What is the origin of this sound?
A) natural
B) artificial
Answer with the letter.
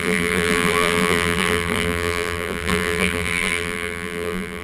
B